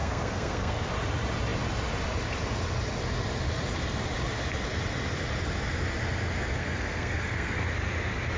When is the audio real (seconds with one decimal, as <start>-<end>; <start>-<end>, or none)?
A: 0.9-6.6; 7.7-8.4